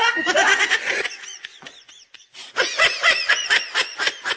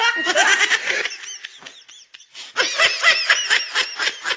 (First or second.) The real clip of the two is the second